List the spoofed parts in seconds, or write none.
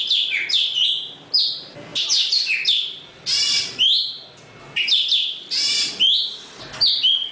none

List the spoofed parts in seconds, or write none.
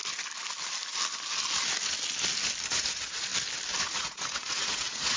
2.7-3.3 (vocoder, Vocos); 3.8-5.2